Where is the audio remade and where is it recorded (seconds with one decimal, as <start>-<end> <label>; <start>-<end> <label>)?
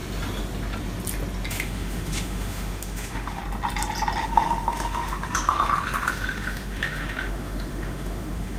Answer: 0.0-1.5 recorded; 1.5-3.4 remade; 3.4-4.2 recorded; 4.2-8.6 remade